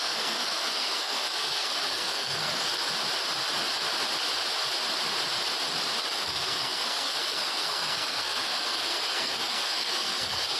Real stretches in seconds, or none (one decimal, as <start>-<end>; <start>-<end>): 2.7-6.1